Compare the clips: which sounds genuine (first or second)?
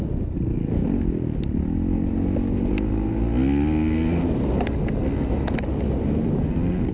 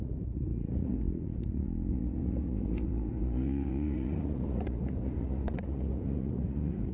first